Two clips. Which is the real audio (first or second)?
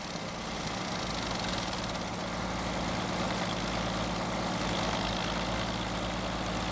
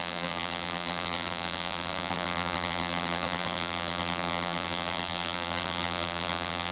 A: first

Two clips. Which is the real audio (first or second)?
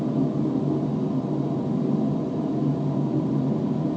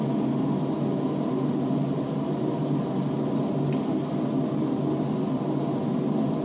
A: first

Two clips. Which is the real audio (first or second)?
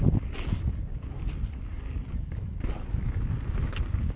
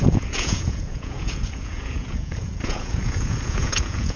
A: first